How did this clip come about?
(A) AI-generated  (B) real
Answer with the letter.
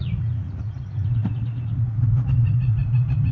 A